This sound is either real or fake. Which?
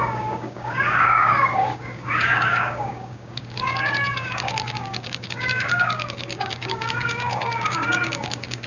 fake